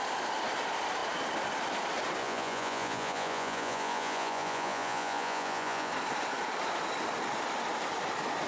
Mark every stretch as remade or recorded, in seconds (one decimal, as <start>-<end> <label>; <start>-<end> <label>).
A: 0.0-2.2 recorded; 2.2-5.9 remade; 5.9-8.5 recorded